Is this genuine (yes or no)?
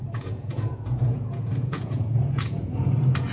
no